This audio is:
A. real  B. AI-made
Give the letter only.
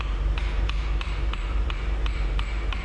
B